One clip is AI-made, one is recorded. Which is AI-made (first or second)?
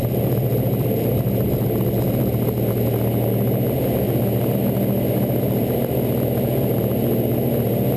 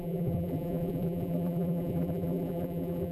second